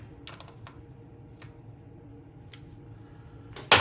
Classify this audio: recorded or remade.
recorded